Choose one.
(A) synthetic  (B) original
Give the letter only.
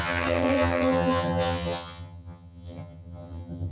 A